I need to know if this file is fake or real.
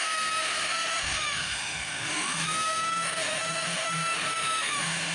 fake